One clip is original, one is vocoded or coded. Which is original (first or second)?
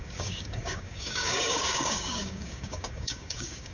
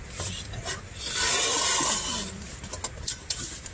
second